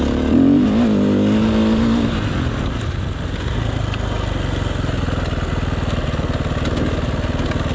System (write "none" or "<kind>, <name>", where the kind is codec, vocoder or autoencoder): none